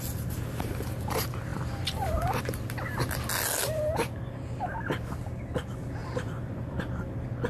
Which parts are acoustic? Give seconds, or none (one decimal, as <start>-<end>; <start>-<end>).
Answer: 0.0-1.5; 2.4-3.6; 4.6-6.0; 6.8-7.5